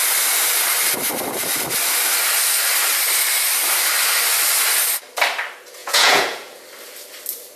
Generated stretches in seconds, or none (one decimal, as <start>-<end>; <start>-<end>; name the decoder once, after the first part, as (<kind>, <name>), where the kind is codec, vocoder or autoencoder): 5.8-6.6 (vocoder, Vocos)